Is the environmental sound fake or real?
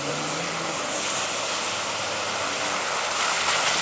real